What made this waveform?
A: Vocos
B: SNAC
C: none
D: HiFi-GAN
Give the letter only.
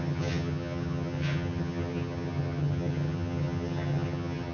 D